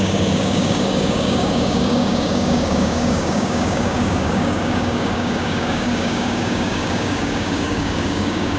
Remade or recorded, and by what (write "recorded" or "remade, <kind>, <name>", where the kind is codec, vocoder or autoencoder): remade, codec, DAC